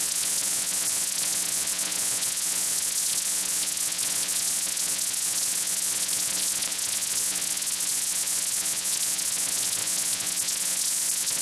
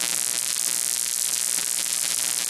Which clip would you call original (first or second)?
second